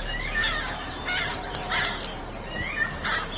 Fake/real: real